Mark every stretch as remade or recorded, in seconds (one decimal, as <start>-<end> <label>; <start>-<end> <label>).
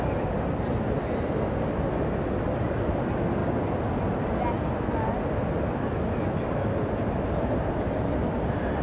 0.0-8.8 recorded